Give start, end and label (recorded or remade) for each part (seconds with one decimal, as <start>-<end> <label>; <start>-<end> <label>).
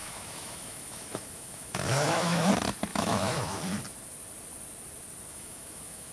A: 0.0-2.5 remade; 2.5-2.9 recorded; 2.9-3.6 remade; 3.6-5.3 recorded; 5.3-6.1 remade